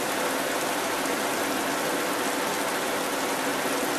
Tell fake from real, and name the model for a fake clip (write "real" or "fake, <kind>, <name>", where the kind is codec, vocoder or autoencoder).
real